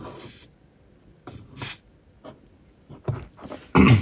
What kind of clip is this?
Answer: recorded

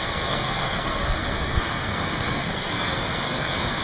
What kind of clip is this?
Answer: remade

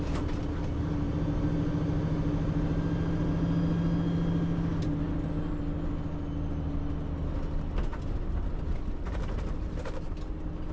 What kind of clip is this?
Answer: recorded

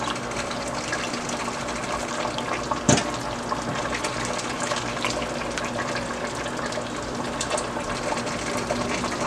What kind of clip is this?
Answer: recorded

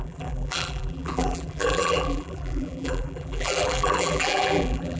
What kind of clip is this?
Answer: remade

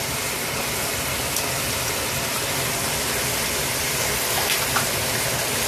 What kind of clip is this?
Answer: recorded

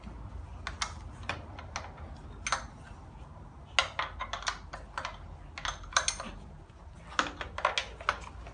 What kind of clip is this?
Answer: recorded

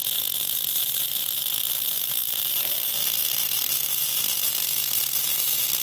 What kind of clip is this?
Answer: recorded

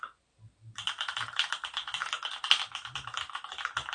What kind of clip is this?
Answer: recorded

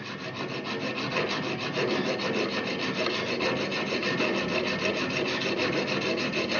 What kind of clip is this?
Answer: recorded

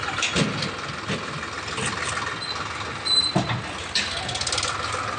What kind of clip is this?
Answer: recorded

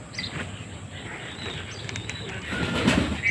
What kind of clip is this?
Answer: recorded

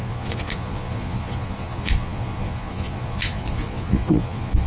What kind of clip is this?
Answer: remade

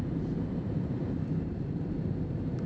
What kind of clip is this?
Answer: remade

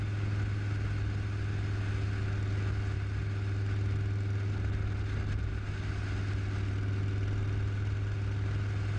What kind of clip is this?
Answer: recorded